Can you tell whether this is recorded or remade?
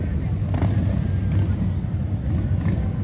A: recorded